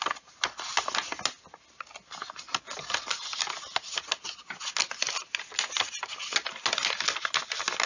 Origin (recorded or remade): recorded